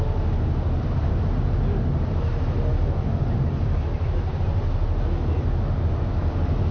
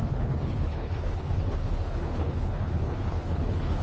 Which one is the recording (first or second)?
first